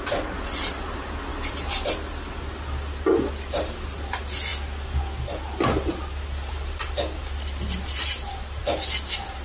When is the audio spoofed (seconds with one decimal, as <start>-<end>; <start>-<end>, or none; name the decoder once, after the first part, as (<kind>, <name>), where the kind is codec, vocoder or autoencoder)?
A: none